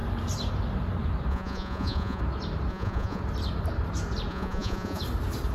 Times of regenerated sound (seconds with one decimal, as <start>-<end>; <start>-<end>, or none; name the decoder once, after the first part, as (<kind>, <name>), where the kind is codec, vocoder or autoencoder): 1.3-2.2 (vocoder, Vocos); 2.7-3.2; 4.3-5.0